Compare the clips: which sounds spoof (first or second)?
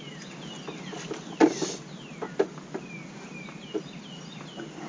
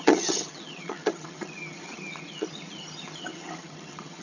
second